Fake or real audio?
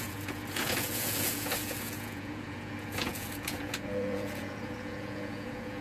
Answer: fake